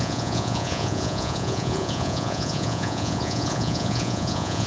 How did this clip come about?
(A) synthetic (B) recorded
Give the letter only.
A